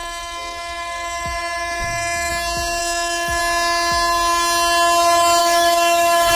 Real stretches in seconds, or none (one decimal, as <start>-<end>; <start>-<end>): 2.3-2.8; 3.4-5.4